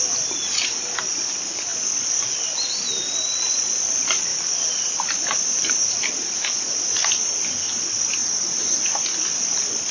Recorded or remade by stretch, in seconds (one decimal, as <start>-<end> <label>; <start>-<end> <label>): 0.0-4.3 recorded; 4.3-5.7 remade; 5.7-9.9 recorded

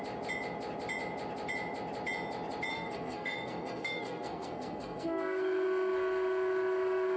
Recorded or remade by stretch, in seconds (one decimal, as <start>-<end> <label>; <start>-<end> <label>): 0.0-2.7 recorded; 2.7-7.2 remade

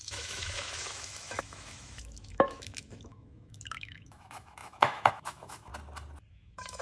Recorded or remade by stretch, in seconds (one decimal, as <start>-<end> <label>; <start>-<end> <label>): 0.0-5.7 remade; 5.7-6.3 recorded; 6.3-6.8 remade

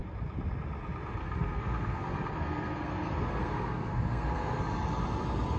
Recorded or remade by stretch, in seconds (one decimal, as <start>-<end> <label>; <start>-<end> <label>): 0.0-1.2 recorded; 1.2-4.6 remade; 4.6-5.6 recorded

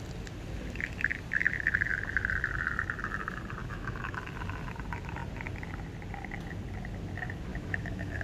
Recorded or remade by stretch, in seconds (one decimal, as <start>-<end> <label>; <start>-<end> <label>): 0.0-3.6 recorded; 3.6-4.2 remade; 4.2-7.5 recorded; 7.5-8.2 remade

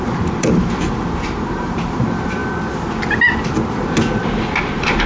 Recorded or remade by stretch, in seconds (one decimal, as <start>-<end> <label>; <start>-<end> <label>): 0.0-2.4 remade; 2.4-4.6 recorded; 4.6-5.1 remade